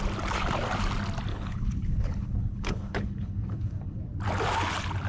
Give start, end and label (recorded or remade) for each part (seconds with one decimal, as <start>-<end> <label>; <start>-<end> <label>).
0.0-1.3 recorded; 1.3-4.0 remade; 4.0-5.1 recorded